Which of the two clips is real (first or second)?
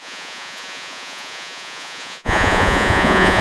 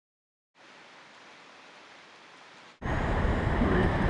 second